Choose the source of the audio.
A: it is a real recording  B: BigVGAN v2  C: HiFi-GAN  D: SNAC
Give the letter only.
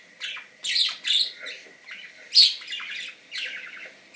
A